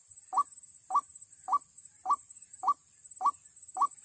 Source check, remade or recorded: remade